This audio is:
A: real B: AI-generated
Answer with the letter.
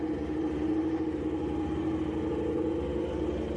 A